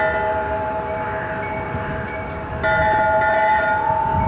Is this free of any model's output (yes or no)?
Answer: yes